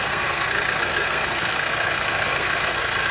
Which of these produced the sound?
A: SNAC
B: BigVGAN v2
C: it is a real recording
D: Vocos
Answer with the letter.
A